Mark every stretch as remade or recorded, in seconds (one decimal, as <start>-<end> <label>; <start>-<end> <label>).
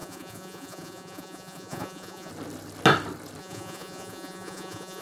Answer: 0.0-2.3 remade; 2.3-3.4 recorded; 3.4-5.0 remade